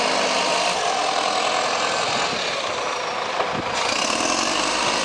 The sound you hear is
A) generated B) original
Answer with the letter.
B